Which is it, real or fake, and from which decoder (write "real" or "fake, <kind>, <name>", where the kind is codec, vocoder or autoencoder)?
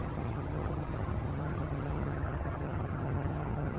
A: fake, vocoder, HiFi-GAN